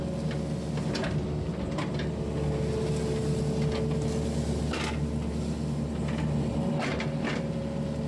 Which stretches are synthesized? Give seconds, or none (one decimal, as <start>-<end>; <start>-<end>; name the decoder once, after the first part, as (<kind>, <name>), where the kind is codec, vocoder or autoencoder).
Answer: none